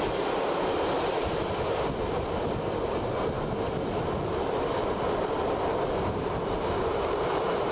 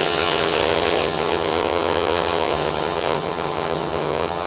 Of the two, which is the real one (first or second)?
first